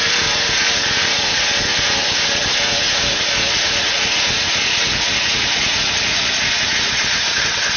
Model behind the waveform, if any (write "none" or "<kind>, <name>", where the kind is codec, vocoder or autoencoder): vocoder, Vocos